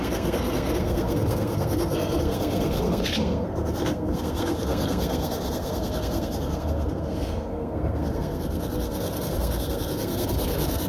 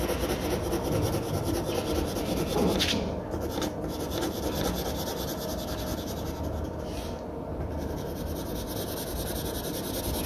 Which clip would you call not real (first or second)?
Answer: first